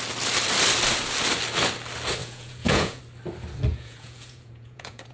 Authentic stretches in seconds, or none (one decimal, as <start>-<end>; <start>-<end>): 0.0-2.2; 3.0-3.7

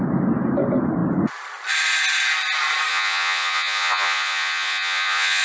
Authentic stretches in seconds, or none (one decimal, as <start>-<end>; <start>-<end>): 0.0-2.9

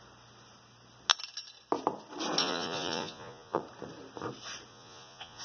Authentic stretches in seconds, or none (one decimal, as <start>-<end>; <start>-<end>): 0.0-2.4; 3.6-4.7

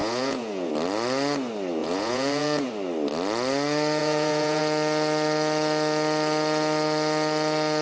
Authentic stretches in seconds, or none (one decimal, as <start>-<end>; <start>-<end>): 0.7-1.8; 2.7-4.0; 4.6-7.8

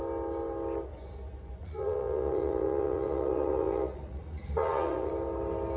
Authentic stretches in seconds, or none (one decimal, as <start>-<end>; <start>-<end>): 0.0-1.6; 5.1-5.8

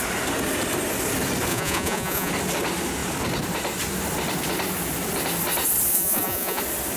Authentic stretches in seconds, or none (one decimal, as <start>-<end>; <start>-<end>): 0.0-1.5; 2.3-5.9; 6.6-7.0